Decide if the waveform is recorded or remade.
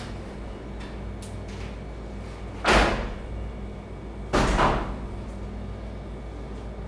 recorded